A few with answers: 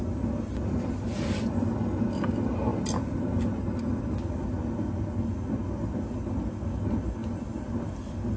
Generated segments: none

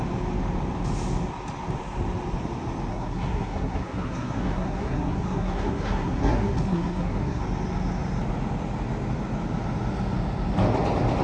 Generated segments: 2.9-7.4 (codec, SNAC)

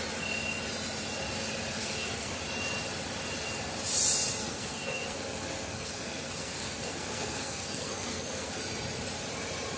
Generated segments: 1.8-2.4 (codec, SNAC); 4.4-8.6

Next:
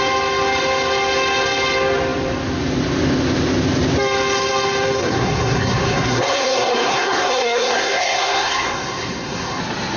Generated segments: 5.0-9.6 (codec, SNAC)